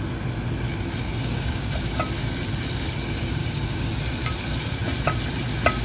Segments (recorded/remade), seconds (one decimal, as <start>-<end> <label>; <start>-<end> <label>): 0.0-1.2 recorded; 1.2-2.0 remade; 2.0-3.4 recorded; 3.4-3.9 remade; 3.9-5.8 recorded